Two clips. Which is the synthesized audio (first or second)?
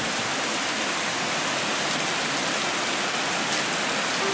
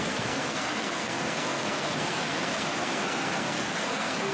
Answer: second